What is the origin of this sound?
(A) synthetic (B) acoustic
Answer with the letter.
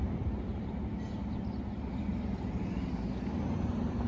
B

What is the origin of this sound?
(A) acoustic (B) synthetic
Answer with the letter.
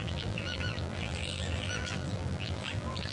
B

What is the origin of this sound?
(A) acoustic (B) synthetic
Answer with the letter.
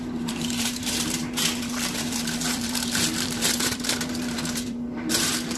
B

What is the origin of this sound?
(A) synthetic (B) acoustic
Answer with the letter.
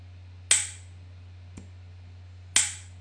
B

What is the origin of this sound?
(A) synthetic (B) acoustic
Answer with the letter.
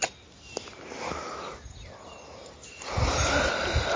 B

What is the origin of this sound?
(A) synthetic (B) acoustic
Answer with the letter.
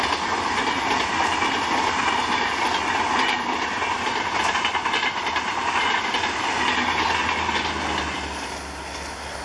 B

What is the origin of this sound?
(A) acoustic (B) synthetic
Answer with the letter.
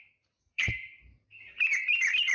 B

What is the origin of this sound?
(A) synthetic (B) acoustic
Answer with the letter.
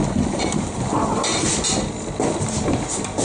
B